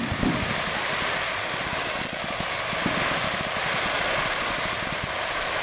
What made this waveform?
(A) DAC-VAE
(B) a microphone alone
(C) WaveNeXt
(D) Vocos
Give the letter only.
B